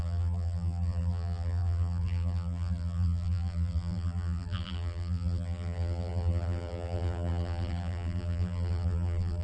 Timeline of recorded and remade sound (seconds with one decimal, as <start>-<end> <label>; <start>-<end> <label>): 0.0-9.4 remade